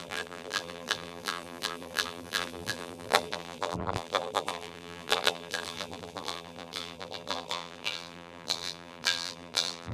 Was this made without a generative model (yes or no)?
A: no